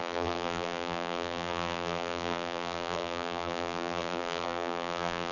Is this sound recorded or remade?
remade